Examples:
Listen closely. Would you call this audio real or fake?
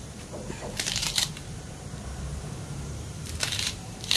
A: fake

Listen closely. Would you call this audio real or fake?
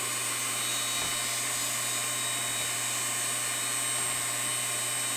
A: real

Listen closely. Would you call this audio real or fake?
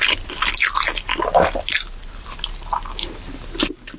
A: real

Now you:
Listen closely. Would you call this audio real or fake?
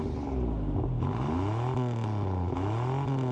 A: real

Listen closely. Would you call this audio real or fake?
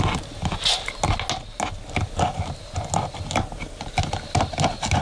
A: real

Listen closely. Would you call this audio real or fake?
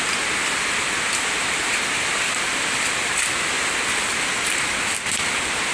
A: real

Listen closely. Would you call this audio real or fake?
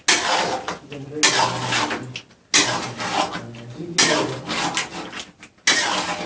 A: real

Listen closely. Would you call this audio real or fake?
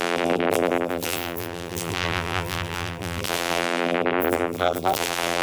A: fake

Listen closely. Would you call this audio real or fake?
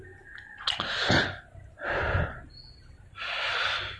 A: real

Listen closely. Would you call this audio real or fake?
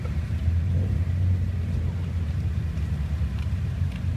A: fake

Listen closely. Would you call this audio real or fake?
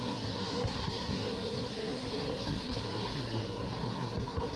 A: fake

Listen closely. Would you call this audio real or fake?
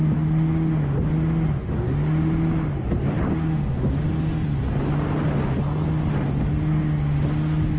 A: real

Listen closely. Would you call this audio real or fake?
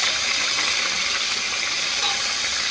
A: real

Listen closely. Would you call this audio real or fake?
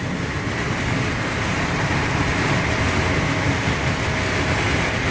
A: real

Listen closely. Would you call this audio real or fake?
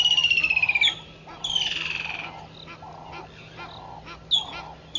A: real